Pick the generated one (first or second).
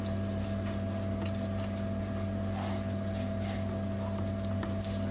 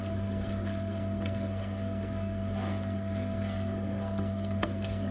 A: second